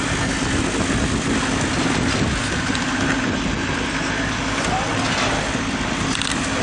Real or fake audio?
real